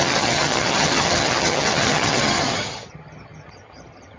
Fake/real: fake